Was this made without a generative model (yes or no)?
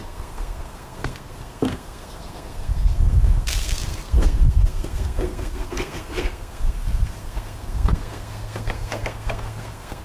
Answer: no